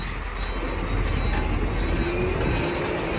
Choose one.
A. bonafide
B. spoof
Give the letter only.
A